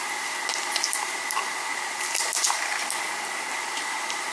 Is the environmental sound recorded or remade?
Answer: recorded